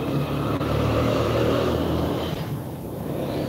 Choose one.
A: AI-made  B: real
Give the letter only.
A